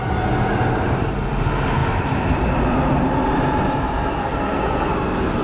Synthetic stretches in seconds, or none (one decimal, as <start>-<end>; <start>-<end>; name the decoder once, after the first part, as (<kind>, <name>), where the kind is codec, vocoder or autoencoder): 4.2-4.9 (codec, SNAC)